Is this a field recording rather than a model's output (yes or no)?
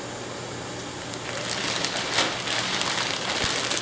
yes